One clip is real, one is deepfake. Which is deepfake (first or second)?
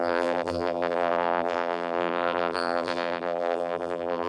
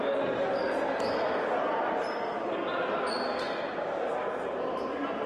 first